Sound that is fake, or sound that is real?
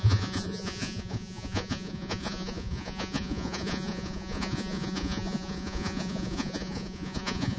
fake